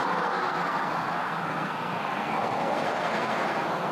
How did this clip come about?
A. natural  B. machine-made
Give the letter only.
B